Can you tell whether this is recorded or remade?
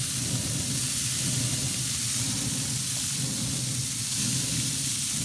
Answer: recorded